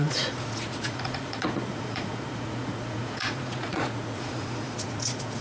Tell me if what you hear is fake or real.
fake